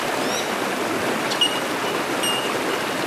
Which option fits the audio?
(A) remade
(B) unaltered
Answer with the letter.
B